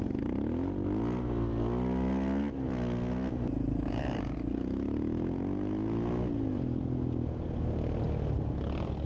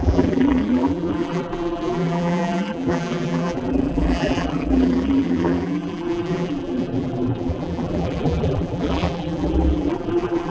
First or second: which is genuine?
first